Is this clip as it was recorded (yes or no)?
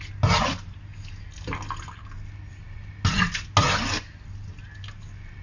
yes